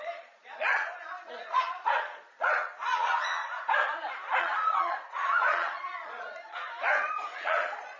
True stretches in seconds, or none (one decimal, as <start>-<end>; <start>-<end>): 3.4-4.4